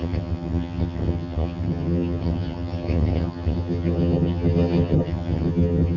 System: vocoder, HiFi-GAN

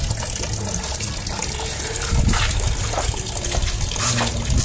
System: none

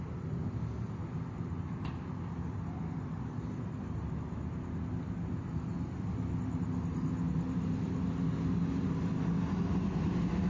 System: none